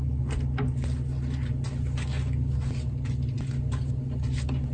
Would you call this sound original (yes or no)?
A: yes